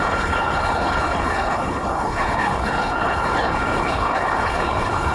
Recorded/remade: remade